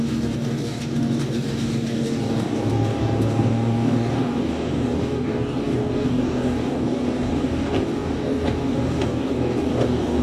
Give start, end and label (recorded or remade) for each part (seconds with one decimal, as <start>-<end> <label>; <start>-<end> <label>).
0.0-10.2 remade